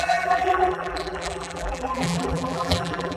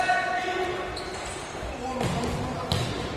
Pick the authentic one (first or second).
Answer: second